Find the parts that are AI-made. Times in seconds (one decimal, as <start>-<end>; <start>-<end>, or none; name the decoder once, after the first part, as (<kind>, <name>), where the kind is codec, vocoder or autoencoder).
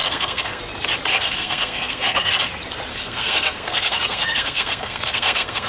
0.0-0.6 (codec, SNAC); 1.1-2.3; 2.9-5.7